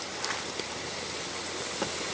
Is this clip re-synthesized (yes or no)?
no